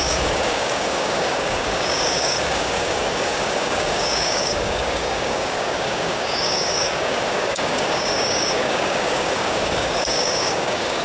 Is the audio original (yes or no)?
no